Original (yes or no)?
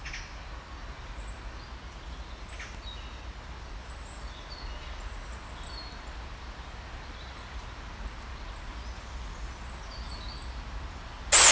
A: yes